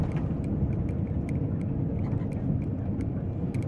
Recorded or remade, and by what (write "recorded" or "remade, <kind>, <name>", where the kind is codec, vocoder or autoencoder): recorded